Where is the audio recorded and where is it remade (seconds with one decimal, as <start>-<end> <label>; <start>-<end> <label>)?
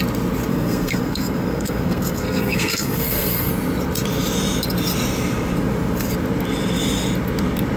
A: 0.0-0.5 recorded; 0.5-3.5 remade; 3.5-7.8 recorded